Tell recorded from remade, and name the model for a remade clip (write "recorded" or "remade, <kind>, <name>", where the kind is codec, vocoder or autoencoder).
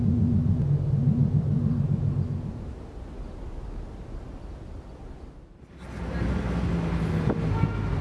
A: recorded